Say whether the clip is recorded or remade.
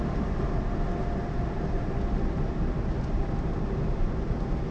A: recorded